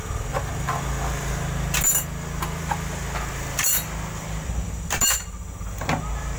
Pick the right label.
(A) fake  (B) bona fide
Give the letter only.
B